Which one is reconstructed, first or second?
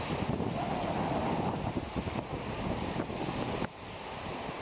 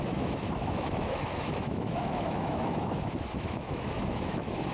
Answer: second